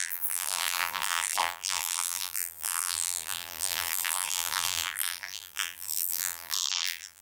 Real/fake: fake